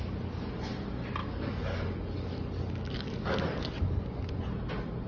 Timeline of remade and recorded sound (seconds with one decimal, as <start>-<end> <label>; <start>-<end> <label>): 0.0-1.2 recorded; 1.2-4.3 remade; 4.3-5.1 recorded